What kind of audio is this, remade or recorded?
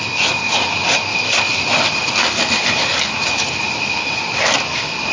recorded